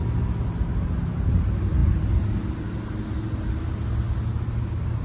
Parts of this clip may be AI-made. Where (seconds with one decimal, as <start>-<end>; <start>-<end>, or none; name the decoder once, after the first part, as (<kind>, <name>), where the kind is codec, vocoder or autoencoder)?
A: none